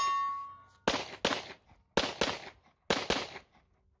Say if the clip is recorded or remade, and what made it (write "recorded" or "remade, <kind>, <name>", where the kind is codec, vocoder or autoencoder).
recorded